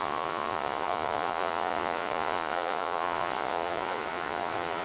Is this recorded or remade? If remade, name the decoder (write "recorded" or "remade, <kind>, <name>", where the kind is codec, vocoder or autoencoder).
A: remade, vocoder, Vocos